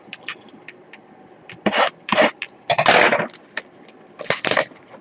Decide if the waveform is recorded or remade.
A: recorded